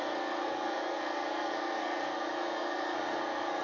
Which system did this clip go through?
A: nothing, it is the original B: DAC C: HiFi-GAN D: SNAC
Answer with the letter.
D